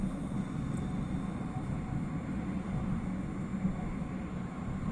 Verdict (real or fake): real